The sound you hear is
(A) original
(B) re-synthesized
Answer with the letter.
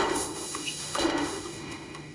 B